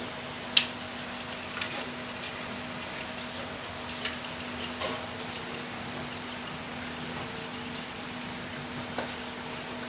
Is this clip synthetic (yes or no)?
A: no